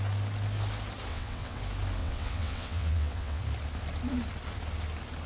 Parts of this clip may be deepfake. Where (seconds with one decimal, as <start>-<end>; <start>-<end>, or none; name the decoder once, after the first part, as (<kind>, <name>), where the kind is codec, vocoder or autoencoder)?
1.1-1.6 (vocoder, WaveNeXt); 2.0-3.4